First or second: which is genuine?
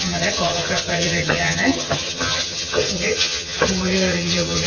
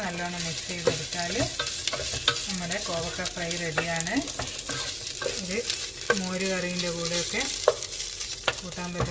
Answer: second